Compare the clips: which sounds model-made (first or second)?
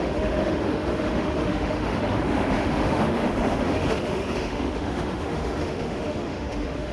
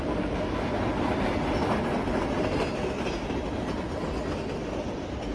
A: first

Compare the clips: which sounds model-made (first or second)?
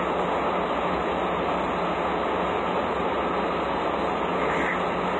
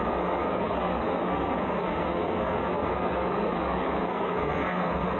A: second